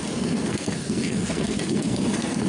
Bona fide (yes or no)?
no